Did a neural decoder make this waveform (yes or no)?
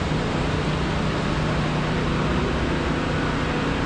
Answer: no